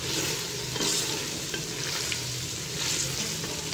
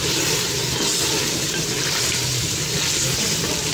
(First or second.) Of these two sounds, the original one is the first